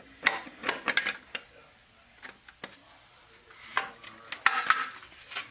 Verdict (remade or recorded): recorded